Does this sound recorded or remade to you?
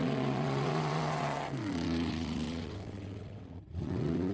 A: remade